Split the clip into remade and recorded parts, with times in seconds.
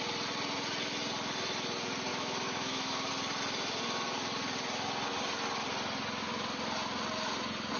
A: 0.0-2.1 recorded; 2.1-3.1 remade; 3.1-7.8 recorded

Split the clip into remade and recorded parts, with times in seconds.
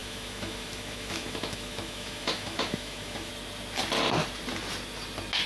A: 0.0-3.3 remade; 3.3-5.5 recorded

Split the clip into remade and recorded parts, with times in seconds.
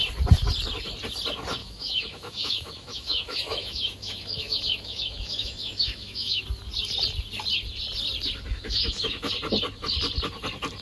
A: 0.0-1.6 recorded; 1.6-6.4 remade; 6.4-8.5 recorded; 8.5-9.3 remade; 9.3-10.8 recorded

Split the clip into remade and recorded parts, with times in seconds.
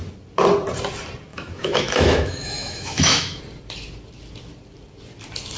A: 0.0-1.3 recorded; 1.3-3.4 remade; 3.4-5.6 recorded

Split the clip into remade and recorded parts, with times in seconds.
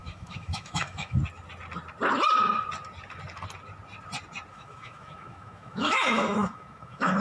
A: 0.0-1.2 remade; 1.2-4.5 recorded; 4.5-7.2 remade